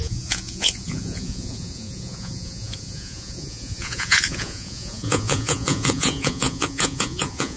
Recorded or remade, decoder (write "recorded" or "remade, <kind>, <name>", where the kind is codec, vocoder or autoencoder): remade, vocoder, Vocos